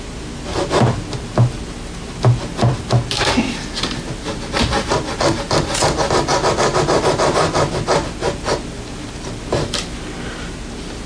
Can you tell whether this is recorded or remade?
recorded